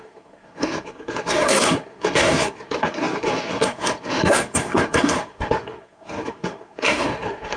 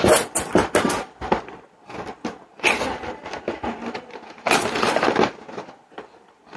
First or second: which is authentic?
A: second